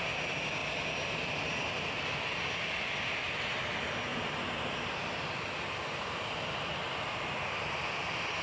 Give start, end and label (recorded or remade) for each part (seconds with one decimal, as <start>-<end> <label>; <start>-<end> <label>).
0.0-8.4 recorded